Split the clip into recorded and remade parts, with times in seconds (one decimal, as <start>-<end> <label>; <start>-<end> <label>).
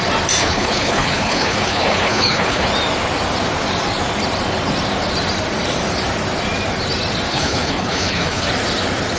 0.0-0.4 recorded; 0.4-2.7 remade; 2.7-7.3 recorded; 7.3-8.5 remade; 8.5-9.2 recorded